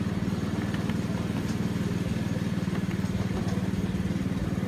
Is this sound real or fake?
real